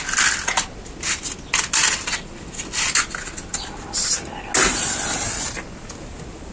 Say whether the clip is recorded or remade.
recorded